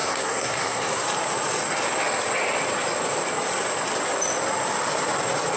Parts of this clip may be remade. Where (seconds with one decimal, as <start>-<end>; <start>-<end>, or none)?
0.0-1.0